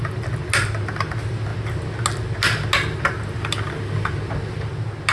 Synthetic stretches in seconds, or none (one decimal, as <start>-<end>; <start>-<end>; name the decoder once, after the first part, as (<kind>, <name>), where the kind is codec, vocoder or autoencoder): none